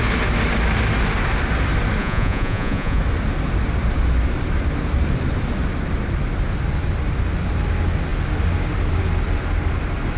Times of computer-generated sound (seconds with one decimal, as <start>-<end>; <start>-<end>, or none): 2.0-3.0